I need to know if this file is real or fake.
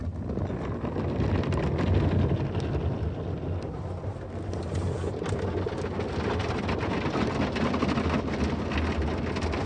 real